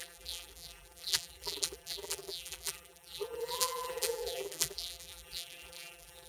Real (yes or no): no